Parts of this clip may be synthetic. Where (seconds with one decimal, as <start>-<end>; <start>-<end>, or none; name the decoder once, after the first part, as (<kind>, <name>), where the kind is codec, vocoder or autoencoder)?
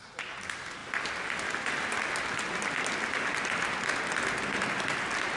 none